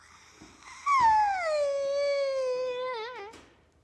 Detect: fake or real real